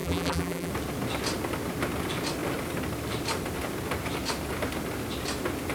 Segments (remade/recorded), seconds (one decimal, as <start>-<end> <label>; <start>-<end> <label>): 0.0-0.7 remade; 0.7-5.7 recorded